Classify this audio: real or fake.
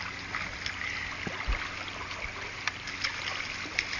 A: real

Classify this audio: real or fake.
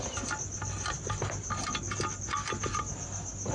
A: real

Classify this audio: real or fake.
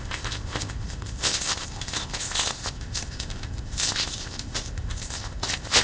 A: fake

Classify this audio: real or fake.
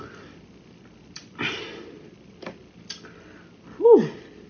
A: real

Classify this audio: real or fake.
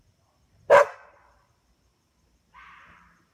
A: fake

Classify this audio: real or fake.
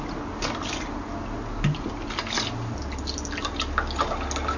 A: real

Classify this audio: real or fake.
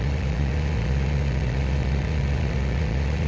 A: fake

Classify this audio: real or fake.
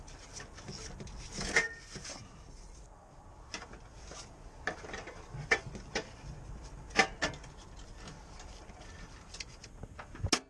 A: real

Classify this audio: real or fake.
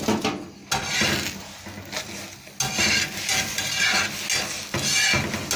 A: real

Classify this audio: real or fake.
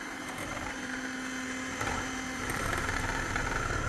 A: fake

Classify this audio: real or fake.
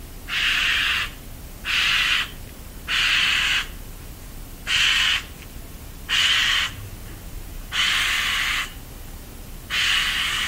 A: real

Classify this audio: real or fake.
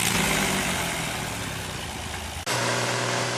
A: real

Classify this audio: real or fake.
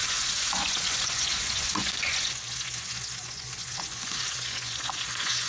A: fake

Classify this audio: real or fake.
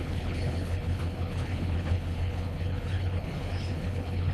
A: fake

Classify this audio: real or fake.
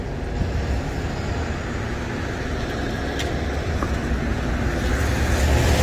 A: real